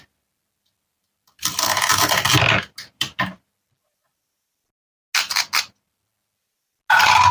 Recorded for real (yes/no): yes